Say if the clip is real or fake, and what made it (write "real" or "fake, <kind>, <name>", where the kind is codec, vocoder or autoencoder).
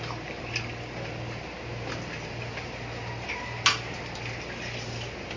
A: real